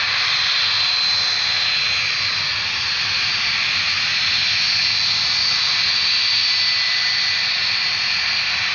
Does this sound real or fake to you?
real